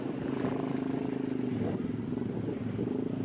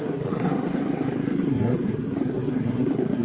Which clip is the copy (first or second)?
second